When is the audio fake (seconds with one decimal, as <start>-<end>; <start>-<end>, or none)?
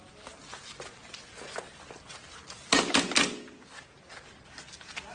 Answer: none